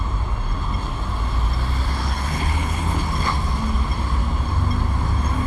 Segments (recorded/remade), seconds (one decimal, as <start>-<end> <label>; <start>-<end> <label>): 0.0-2.0 recorded; 2.0-3.3 remade; 3.3-5.5 recorded